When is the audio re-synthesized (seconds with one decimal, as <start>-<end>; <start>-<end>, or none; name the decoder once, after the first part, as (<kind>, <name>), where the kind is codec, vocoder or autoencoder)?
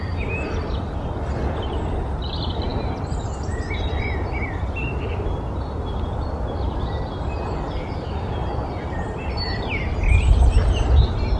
none